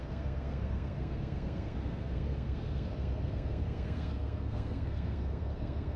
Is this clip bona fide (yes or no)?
no